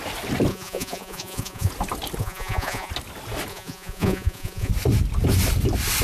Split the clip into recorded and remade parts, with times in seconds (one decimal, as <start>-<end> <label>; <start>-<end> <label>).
0.0-0.5 recorded; 0.5-1.7 remade; 1.7-2.2 recorded; 2.2-2.9 remade; 2.9-3.5 recorded; 3.5-4.7 remade; 4.7-6.0 recorded

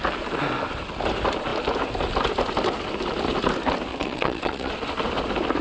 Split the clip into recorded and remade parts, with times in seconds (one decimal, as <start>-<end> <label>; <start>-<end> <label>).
0.0-3.9 recorded; 3.9-4.7 remade; 4.7-5.6 recorded

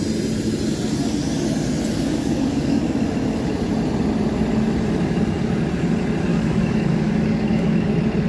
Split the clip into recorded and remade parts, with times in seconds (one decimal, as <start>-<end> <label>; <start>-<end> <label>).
0.0-2.1 recorded; 2.1-2.8 remade; 2.8-6.3 recorded; 6.3-7.9 remade; 7.9-8.3 recorded

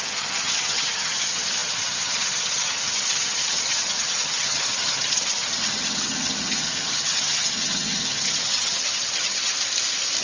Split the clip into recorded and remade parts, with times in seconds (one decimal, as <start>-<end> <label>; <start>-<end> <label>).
0.0-9.5 remade; 9.5-10.2 recorded

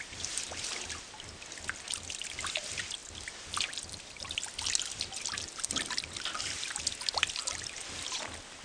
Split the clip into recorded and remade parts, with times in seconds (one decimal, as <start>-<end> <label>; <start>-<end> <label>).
0.0-8.6 recorded